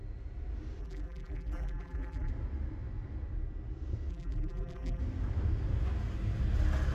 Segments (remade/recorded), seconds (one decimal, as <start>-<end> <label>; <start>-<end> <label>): 0.0-0.8 recorded; 0.8-2.3 remade; 2.3-4.1 recorded; 4.1-5.0 remade; 5.0-6.9 recorded